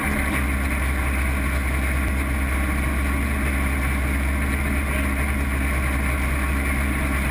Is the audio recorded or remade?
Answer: recorded